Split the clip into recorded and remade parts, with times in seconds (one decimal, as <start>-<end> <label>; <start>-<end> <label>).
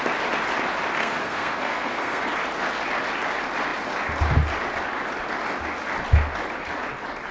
0.0-1.0 recorded; 1.0-2.2 remade; 2.2-7.3 recorded